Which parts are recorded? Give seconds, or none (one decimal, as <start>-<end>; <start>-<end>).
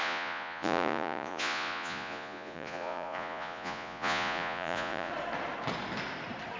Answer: 5.1-6.6